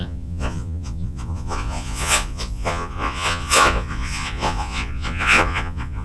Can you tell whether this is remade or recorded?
remade